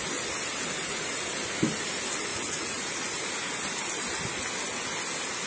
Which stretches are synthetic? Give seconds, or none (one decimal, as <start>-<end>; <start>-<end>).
2.3-2.9

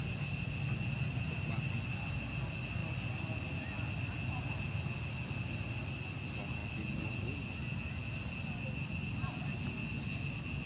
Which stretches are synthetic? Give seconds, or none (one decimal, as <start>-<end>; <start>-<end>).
none

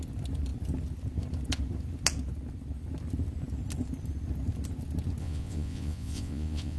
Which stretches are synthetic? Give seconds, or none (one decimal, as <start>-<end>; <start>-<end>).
5.2-6.8